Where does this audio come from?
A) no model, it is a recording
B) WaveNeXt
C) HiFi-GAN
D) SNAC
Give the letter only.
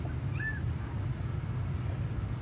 A